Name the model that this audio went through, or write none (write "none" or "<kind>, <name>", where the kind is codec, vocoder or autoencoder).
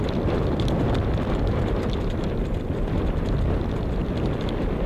vocoder, BigVGAN v2